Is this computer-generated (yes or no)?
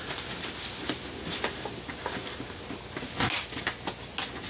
no